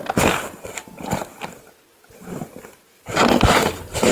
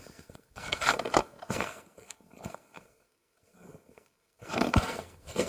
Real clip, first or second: first